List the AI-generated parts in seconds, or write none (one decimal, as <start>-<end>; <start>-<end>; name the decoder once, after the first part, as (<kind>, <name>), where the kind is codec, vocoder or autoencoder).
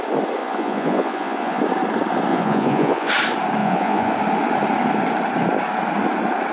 0.4-1.6 (vocoder, Vocos); 2.3-3.1; 3.6-4.1